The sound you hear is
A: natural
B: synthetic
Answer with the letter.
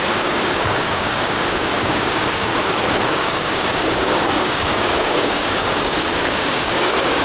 B